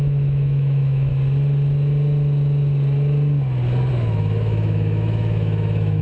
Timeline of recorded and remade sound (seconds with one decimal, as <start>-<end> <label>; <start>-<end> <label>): 0.0-1.1 remade; 1.1-3.9 recorded; 3.9-6.0 remade